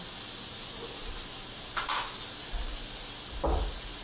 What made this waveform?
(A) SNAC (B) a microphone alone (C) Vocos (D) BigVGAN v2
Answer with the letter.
B